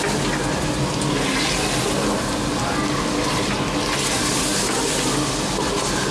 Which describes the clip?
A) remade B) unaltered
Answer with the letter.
B